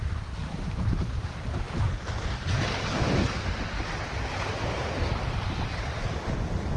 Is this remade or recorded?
recorded